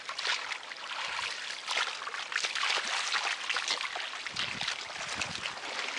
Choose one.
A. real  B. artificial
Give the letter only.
A